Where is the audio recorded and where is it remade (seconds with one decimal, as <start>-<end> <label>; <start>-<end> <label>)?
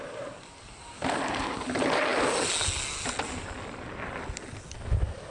0.0-5.3 recorded